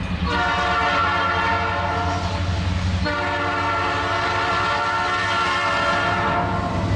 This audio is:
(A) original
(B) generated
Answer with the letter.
A